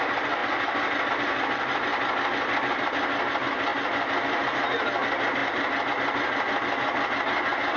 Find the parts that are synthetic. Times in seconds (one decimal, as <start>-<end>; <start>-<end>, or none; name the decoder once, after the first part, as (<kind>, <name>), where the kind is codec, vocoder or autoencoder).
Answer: none